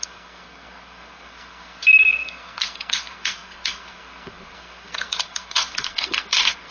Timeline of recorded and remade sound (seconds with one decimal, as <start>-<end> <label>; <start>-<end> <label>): 0.0-6.7 remade

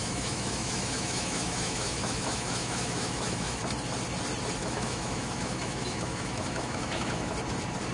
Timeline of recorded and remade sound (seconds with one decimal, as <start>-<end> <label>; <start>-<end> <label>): 0.0-3.6 remade; 3.6-4.6 recorded; 4.6-7.3 remade; 7.3-7.9 recorded

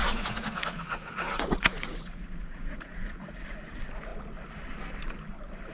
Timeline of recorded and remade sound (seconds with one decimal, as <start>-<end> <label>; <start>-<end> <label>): 0.0-3.3 remade; 3.3-5.7 recorded

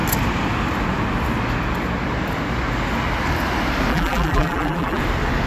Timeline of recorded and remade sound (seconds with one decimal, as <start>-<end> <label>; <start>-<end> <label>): 0.0-3.9 recorded; 3.9-5.0 remade; 5.0-5.5 recorded

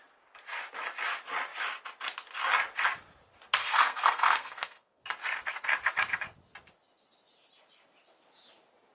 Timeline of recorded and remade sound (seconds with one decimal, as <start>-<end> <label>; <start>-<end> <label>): 0.0-3.6 recorded; 3.6-5.0 remade; 5.0-8.9 recorded